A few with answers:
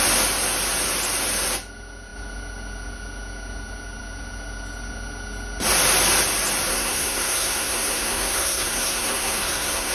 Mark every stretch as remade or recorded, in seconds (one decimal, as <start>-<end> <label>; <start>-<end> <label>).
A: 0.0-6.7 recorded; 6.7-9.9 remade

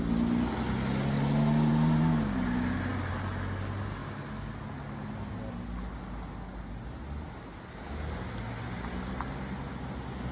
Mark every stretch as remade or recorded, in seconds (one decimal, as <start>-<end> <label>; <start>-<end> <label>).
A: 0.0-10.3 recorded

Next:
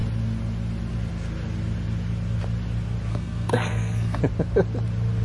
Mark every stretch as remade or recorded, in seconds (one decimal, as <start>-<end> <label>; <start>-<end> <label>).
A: 0.0-3.1 recorded; 3.1-4.2 remade; 4.2-5.2 recorded

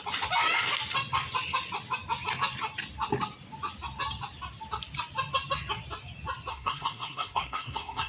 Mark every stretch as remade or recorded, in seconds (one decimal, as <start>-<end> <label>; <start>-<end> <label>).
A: 0.0-6.5 recorded; 6.5-8.1 remade